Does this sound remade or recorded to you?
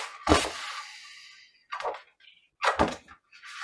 recorded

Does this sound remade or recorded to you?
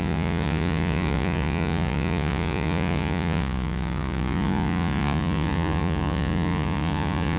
remade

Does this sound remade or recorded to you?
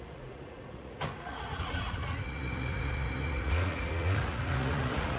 remade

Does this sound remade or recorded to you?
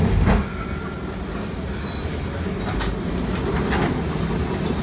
recorded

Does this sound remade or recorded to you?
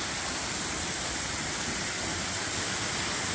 recorded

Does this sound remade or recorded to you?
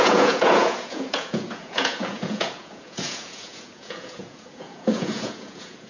remade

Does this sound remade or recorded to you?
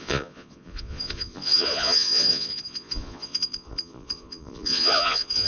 remade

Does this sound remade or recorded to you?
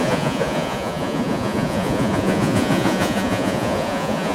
remade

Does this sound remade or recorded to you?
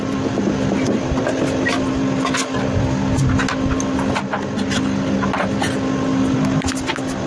recorded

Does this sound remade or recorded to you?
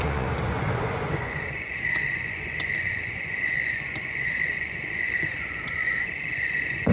remade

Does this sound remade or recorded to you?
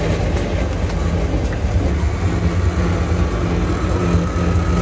recorded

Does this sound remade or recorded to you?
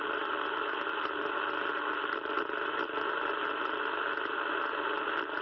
recorded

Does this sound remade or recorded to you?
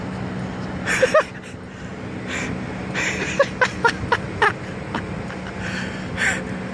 recorded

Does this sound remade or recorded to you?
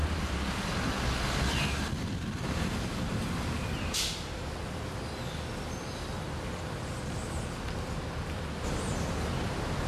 recorded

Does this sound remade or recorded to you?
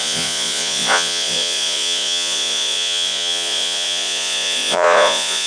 remade